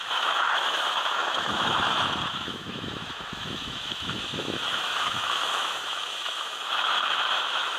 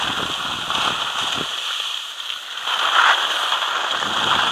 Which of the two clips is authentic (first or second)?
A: second